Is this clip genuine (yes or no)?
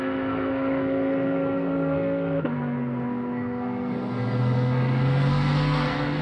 no